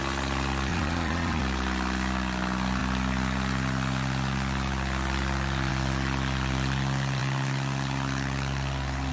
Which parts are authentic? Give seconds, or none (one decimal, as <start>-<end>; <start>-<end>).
0.0-0.7; 1.4-9.1